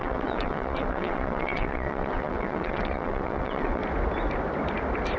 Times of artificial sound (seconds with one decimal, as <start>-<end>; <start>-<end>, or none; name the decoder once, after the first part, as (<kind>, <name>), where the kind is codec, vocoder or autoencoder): 0.0-3.8 (vocoder, WaveNeXt)